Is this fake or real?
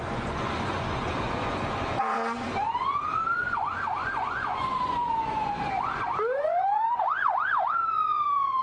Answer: fake